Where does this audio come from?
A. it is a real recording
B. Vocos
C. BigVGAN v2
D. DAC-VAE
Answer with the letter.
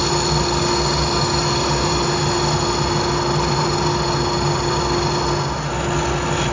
A